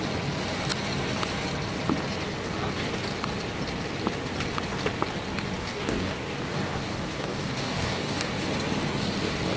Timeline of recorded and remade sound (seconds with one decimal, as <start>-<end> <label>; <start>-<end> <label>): 0.0-5.6 recorded; 5.6-8.3 remade; 8.3-9.6 recorded